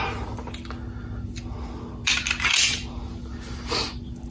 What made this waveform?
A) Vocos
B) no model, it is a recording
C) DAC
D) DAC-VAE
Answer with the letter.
B